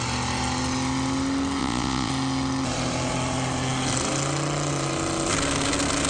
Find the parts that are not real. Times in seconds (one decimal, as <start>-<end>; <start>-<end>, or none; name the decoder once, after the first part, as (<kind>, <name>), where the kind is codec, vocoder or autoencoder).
1.6-2.1 (vocoder, Vocos)